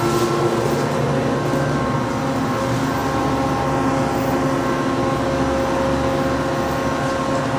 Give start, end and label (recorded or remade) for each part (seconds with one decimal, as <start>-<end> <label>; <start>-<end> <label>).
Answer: 0.0-7.6 recorded